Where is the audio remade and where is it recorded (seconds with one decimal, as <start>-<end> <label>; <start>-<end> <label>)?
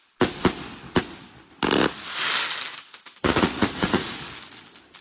0.0-2.7 recorded; 2.7-4.2 remade; 4.2-5.0 recorded